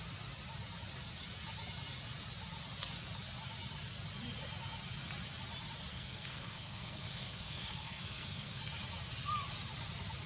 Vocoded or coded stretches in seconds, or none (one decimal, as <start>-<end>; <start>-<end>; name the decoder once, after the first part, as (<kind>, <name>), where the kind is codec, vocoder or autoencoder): 5.9-8.6 (codec, SNAC)